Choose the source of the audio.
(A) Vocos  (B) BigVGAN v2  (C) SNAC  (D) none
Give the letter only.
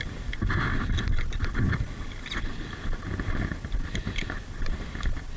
D